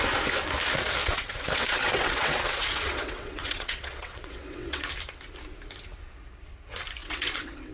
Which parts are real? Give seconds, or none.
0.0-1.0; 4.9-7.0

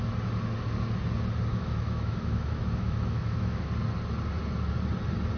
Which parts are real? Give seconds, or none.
0.0-1.5; 3.7-5.4